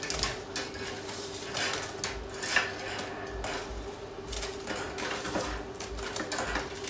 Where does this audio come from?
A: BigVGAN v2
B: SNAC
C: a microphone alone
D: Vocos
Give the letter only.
C